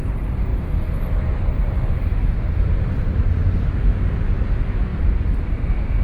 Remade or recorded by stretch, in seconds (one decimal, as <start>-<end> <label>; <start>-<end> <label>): 0.0-0.5 recorded; 0.5-3.7 remade; 3.7-6.0 recorded